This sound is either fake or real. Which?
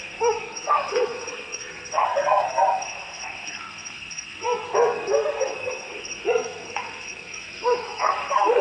fake